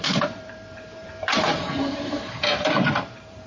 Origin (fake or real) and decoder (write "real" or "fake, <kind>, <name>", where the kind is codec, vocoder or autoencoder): fake, vocoder, BigVGAN v2